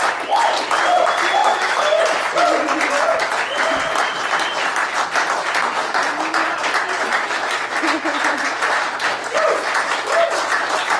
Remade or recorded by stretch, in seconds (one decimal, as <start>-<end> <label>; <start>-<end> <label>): 0.0-1.4 recorded; 1.4-2.0 remade; 2.0-11.0 recorded